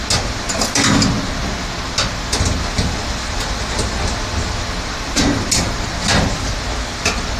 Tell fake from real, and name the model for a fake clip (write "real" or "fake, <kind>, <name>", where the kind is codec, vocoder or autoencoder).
real